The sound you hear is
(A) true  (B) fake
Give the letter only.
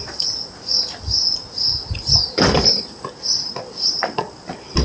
A